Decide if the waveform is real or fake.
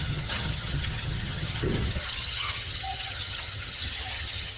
fake